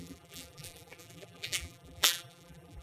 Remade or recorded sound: remade